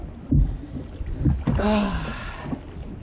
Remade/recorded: recorded